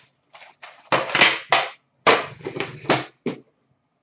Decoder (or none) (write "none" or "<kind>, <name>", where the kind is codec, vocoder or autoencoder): none